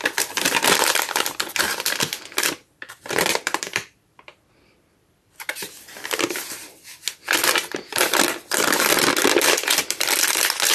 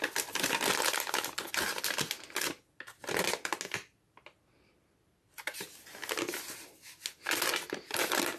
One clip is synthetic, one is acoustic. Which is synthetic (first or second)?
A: first